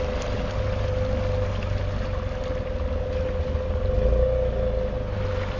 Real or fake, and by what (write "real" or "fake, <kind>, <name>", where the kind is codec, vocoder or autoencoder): real